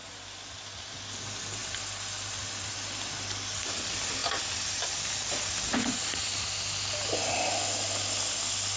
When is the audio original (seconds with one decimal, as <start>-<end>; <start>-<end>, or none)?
1.0-1.6; 2.4-4.2; 6.9-8.8